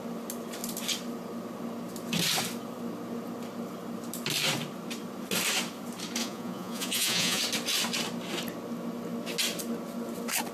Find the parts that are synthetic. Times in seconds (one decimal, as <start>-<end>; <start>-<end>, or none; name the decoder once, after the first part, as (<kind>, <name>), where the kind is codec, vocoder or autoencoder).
6.2-7.4 (vocoder, Vocos)